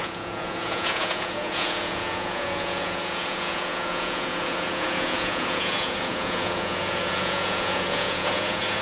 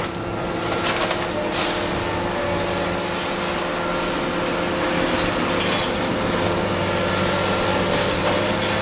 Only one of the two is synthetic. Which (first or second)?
first